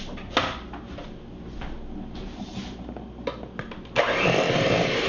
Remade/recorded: recorded